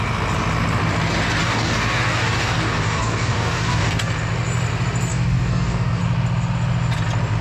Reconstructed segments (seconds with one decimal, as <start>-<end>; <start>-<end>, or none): 1.4-4.1; 5.1-6.0